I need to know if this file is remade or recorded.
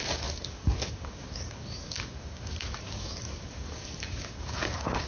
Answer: remade